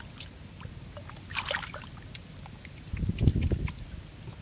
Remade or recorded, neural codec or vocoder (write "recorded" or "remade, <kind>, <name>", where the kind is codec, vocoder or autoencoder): recorded